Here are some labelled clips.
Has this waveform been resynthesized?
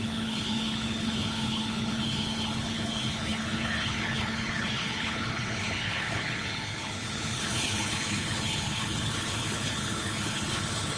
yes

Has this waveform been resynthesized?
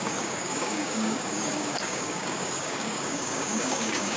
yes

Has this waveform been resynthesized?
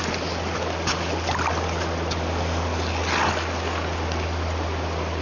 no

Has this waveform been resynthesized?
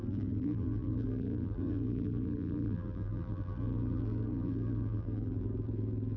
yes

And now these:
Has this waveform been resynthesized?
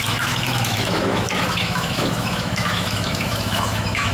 yes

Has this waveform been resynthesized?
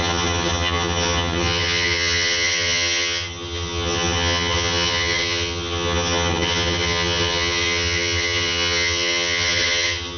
yes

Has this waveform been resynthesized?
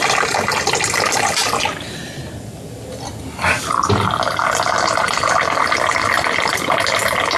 no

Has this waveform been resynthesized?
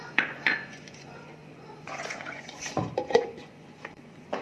yes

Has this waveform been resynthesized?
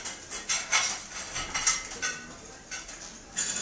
no